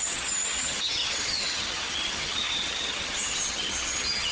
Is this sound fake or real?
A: fake